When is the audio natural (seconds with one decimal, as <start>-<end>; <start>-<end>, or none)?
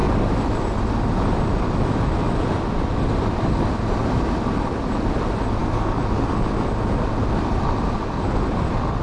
0.0-9.0